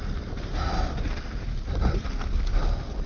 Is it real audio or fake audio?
real